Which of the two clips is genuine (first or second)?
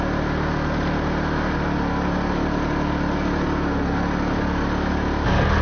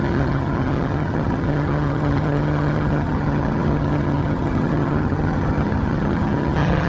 first